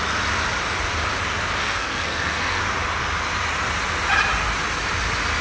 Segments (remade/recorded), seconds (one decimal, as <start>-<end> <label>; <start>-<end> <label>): 0.0-1.6 recorded; 1.6-2.6 remade; 2.6-5.4 recorded